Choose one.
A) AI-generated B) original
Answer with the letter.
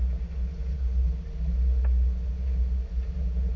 B